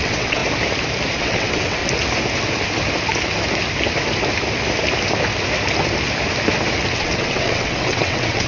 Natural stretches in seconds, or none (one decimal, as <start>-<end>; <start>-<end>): 0.4-1.2; 1.8-6.9